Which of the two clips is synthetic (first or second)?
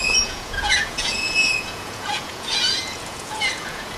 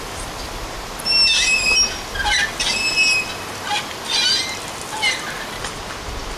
first